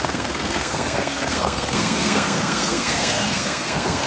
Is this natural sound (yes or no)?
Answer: no